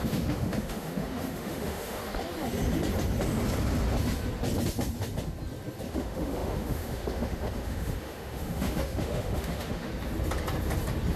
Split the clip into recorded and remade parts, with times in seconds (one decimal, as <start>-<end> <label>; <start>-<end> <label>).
0.0-2.0 remade; 2.0-5.9 recorded; 5.9-9.9 remade; 9.9-11.2 recorded